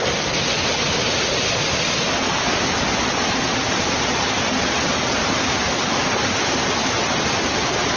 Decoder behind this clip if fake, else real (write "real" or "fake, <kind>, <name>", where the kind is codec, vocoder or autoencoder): real